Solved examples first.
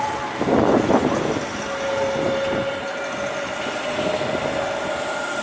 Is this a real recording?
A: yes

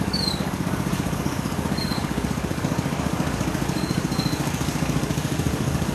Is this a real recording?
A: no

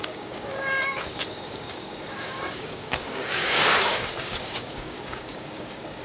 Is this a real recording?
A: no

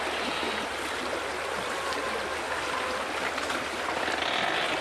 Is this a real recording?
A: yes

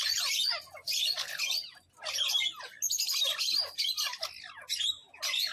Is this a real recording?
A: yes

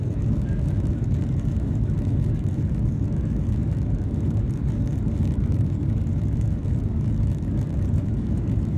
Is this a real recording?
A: no